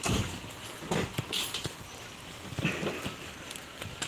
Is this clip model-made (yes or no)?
no